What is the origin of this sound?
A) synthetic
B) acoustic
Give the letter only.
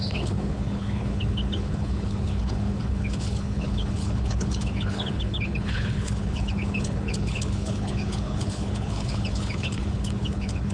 A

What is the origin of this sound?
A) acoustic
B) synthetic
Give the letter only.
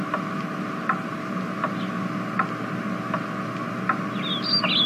A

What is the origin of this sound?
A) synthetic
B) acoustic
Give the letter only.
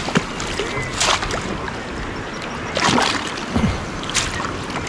B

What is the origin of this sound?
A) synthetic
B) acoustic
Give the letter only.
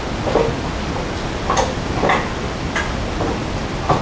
B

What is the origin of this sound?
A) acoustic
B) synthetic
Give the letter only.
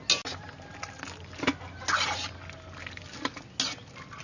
A